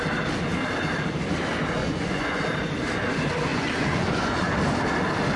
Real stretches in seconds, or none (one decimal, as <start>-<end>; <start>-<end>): 0.0-1.8; 2.4-3.5; 4.5-5.4